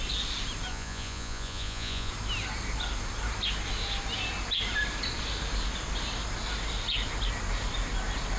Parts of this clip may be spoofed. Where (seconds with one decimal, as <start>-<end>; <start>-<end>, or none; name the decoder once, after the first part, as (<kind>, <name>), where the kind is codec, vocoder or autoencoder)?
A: 0.7-2.1 (vocoder, Vocos)